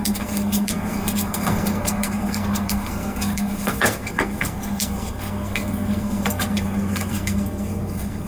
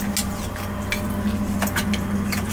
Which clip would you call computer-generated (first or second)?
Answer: first